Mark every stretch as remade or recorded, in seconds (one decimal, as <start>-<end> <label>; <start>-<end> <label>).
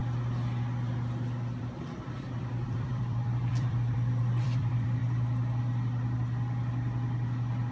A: 0.0-1.6 recorded; 1.6-5.0 remade; 5.0-7.7 recorded